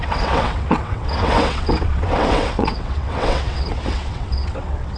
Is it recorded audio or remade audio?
remade